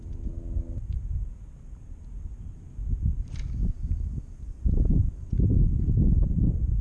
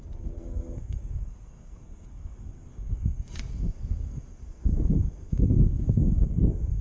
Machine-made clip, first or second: second